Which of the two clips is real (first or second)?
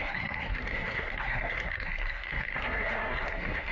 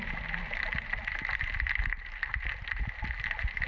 second